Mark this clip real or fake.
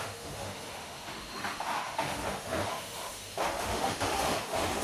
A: fake